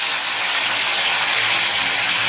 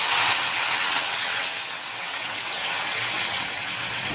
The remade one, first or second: second